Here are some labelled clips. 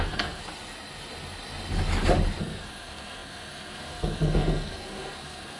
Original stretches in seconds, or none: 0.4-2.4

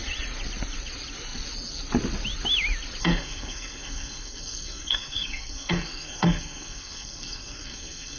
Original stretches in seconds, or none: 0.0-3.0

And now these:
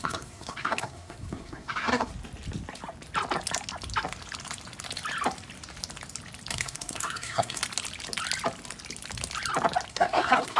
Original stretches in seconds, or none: 2.1-6.5; 7.6-9.9

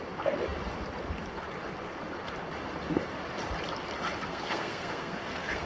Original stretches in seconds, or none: 0.0-4.3

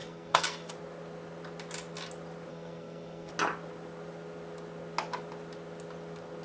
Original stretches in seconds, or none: 0.7-2.5; 3.3-6.4